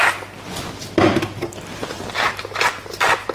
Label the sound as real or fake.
real